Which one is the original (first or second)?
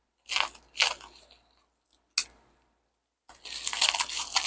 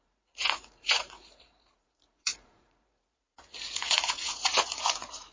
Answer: first